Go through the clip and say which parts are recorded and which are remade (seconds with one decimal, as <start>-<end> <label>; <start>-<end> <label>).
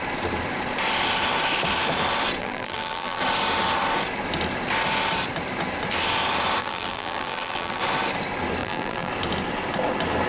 0.0-2.4 recorded; 2.4-3.2 remade; 3.2-6.6 recorded; 6.6-7.8 remade; 7.8-8.6 recorded; 8.6-9.1 remade; 9.1-10.3 recorded